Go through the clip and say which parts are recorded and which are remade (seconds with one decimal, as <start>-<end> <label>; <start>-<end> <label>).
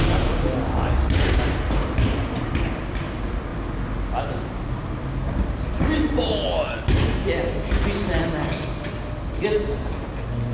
0.0-3.5 remade; 3.5-4.2 recorded; 4.2-7.2 remade; 7.2-9.3 recorded; 9.3-10.5 remade